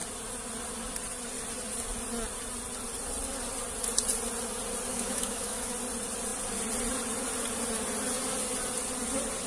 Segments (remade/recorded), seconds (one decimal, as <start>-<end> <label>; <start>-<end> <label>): 0.0-4.9 recorded; 4.9-5.7 remade; 5.7-9.5 recorded